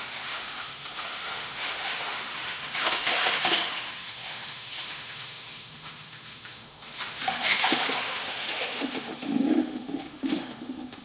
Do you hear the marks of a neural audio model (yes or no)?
yes